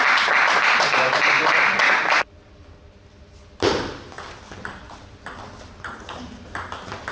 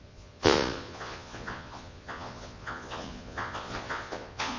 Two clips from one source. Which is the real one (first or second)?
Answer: first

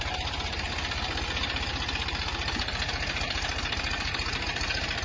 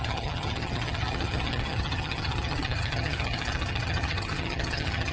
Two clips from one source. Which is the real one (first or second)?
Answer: first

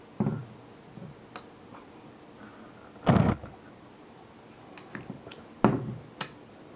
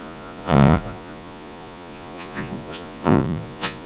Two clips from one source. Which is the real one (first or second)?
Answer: first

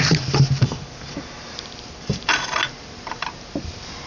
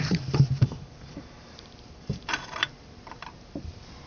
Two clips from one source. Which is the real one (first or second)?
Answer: first